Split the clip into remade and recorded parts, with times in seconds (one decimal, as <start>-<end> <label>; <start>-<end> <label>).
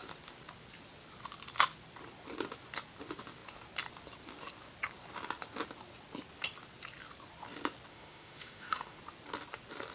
0.0-7.9 recorded; 7.9-9.0 remade; 9.0-9.9 recorded